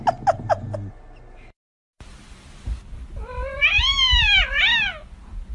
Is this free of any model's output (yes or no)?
yes